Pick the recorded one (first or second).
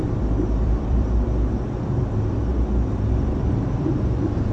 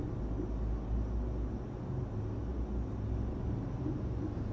second